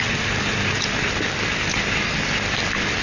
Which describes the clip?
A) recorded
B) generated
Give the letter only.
A